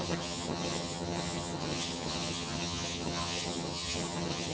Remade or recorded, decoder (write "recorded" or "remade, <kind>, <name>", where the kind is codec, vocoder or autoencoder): remade, vocoder, HiFi-GAN